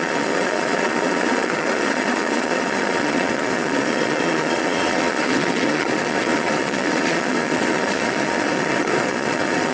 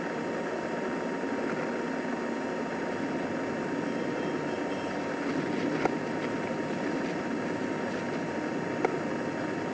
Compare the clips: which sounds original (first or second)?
second